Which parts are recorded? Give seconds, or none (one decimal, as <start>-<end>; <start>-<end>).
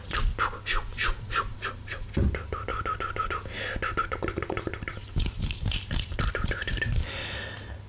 0.0-1.5; 2.2-4.0; 6.8-7.9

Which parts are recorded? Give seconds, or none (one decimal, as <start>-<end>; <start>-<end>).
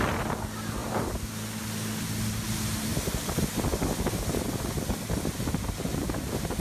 0.0-0.8; 1.6-6.6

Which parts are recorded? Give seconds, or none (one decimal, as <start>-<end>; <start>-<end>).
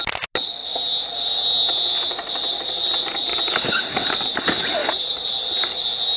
0.0-6.2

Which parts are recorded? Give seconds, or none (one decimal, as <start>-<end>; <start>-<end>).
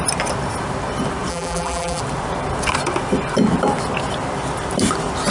0.0-1.3; 2.0-5.3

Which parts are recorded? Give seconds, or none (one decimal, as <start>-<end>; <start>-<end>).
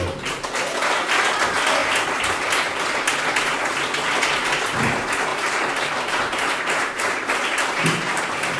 0.0-5.3; 8.2-8.6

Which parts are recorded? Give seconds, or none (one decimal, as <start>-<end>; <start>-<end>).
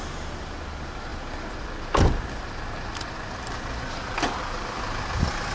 0.0-5.5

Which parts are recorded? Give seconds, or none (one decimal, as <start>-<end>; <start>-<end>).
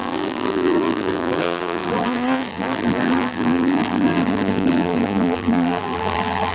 none